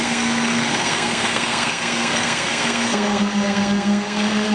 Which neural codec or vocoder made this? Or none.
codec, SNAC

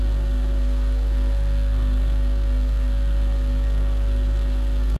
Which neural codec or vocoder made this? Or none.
codec, SNAC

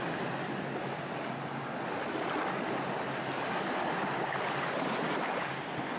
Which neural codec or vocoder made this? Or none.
none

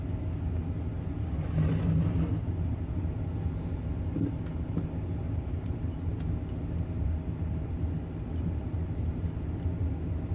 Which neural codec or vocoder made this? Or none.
none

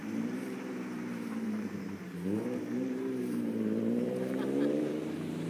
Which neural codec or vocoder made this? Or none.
vocoder, BigVGAN v2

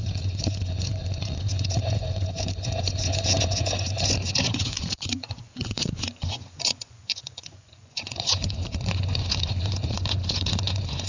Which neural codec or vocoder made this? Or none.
vocoder, Vocos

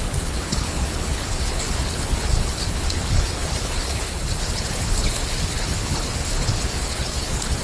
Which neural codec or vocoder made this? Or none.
codec, HILCodec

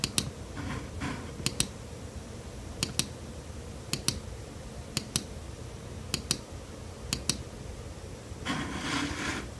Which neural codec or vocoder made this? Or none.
none